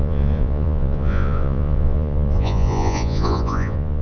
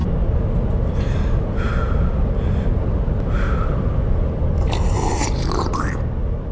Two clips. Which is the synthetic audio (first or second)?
first